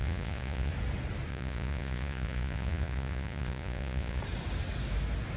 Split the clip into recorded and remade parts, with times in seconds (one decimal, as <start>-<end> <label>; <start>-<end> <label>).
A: 0.0-0.7 remade; 0.7-1.3 recorded; 1.3-4.2 remade; 4.2-5.4 recorded